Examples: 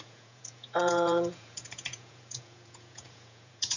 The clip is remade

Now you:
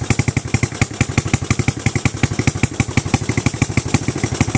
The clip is recorded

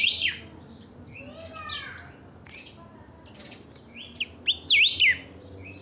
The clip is recorded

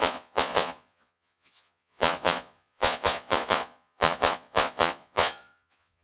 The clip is remade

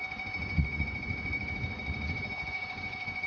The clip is remade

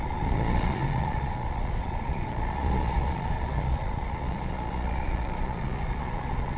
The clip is remade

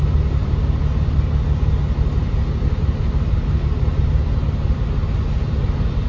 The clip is recorded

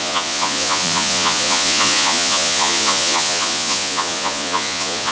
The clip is remade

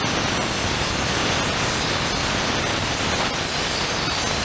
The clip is recorded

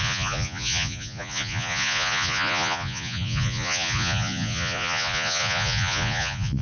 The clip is remade